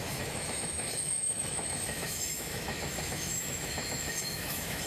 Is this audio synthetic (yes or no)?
yes